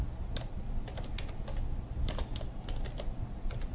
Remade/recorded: recorded